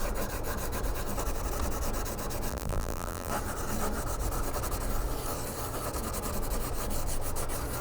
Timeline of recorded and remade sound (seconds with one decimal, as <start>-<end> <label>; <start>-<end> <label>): 0.0-2.5 recorded; 2.5-3.3 remade; 3.3-7.8 recorded